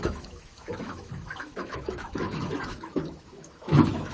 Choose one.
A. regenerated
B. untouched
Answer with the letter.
A